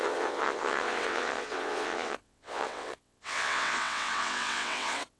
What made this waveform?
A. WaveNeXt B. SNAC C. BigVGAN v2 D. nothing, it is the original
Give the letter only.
A